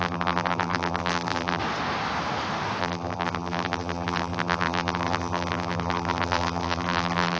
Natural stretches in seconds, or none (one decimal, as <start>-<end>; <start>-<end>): 1.6-2.8